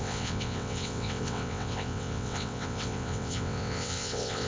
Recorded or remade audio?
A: remade